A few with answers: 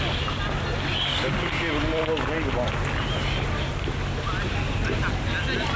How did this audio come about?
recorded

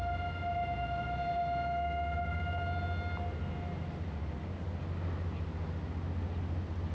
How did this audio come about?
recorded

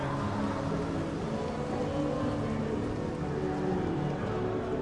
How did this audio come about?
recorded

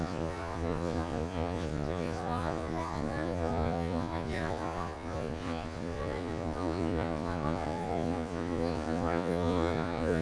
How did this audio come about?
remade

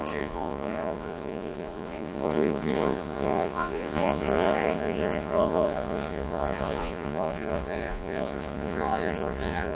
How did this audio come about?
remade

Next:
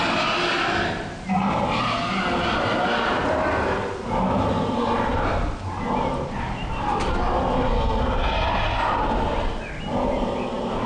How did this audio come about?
recorded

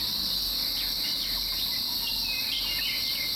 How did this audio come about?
recorded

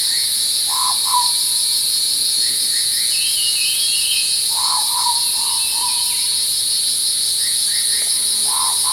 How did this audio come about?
remade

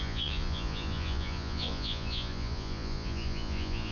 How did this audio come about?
remade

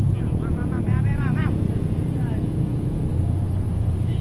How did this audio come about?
remade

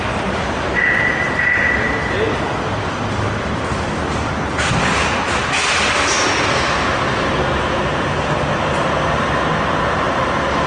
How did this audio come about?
recorded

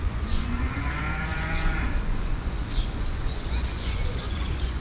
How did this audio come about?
remade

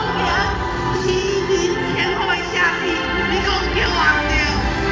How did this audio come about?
recorded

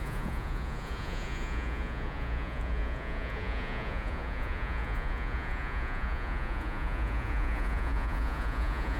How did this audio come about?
remade